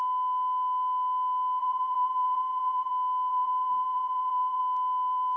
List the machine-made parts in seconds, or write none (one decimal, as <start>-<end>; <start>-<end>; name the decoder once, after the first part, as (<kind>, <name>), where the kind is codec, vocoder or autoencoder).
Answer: 1.6-2.9 (vocoder, Vocos); 3.3-4.6